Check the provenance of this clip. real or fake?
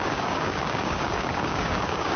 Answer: fake